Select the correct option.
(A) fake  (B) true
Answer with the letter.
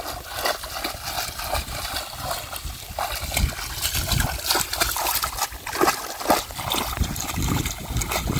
B